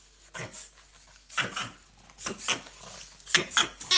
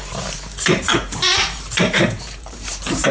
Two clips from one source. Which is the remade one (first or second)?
second